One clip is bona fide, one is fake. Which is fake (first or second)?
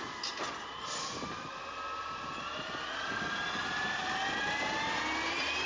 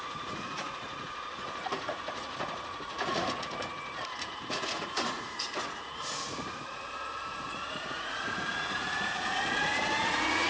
second